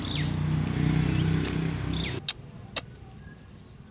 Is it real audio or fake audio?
real